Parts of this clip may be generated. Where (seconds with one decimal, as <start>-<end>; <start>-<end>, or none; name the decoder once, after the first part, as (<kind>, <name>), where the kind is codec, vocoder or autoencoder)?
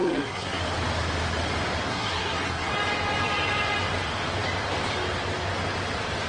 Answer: 0.0-0.6 (codec, SNAC); 1.9-2.7